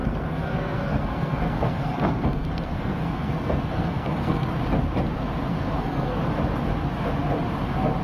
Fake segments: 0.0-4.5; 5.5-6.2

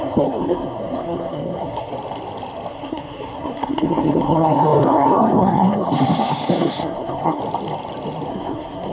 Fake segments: 0.0-1.9; 2.7-7.4; 8.3-8.9